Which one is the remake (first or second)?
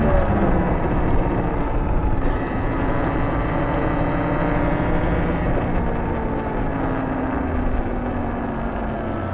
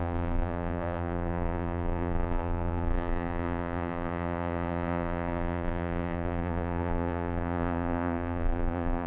second